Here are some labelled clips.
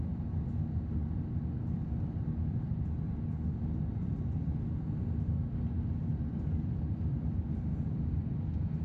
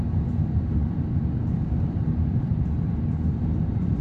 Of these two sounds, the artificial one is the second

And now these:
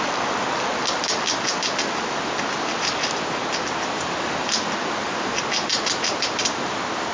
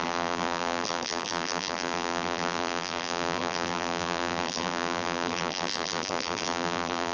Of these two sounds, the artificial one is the second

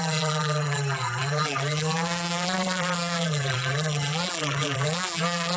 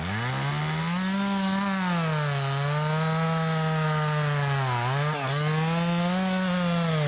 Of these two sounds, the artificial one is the first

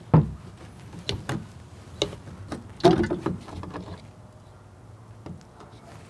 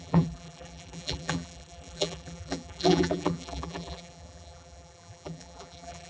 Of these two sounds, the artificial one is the second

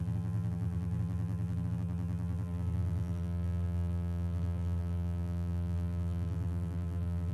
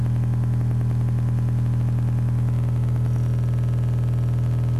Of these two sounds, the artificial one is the first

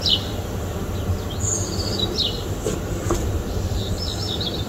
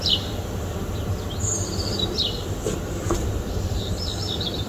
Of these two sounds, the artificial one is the second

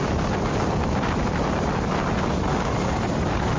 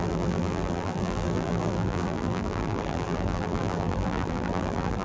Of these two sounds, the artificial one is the second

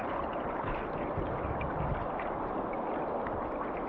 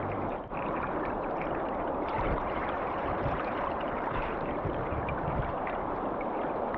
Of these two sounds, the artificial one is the second